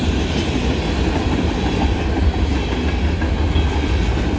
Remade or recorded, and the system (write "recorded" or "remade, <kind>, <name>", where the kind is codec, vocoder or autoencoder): recorded